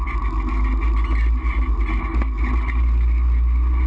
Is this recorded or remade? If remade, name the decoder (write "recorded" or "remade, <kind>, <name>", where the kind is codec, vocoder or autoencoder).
recorded